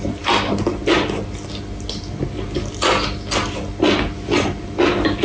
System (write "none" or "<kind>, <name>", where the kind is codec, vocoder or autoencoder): none